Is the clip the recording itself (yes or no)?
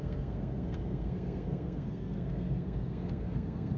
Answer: no